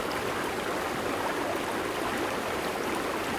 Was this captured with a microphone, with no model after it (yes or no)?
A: yes